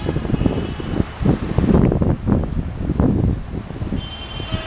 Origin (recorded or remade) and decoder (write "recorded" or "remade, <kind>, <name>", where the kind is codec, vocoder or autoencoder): recorded